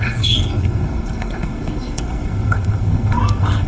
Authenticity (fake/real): fake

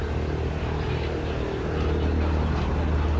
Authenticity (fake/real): real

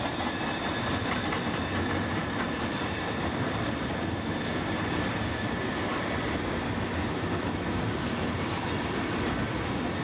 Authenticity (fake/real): real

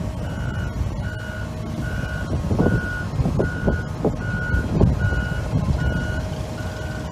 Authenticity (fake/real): real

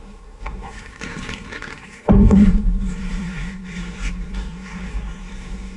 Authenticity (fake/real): fake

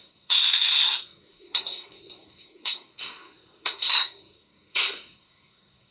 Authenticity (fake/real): fake